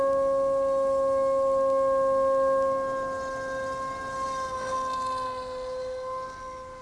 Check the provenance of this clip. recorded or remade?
recorded